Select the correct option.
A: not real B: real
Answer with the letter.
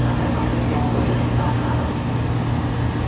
B